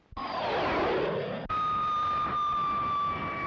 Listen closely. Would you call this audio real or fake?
real